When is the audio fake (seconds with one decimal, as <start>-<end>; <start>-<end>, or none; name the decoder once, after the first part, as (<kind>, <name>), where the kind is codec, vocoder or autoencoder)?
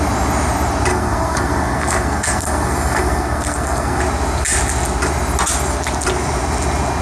0.9-4.0 (codec, SNAC)